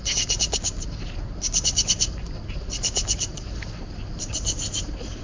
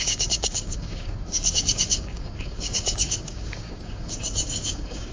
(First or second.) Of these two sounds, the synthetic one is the second